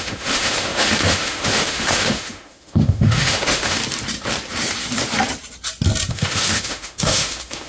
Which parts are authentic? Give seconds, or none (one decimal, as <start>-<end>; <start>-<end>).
3.8-6.1